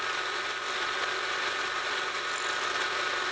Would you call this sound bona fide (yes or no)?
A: yes